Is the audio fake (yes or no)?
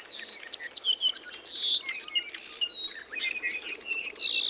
no